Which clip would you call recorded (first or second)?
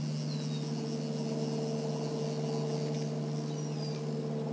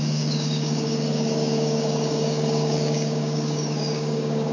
first